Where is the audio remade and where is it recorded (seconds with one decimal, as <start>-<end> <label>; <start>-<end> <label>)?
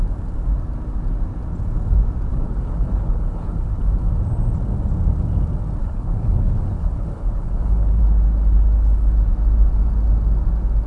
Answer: 0.0-2.3 recorded; 2.3-3.8 remade; 3.8-5.8 recorded; 5.8-8.0 remade; 8.0-10.9 recorded